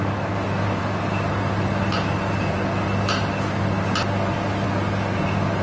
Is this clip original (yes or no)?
yes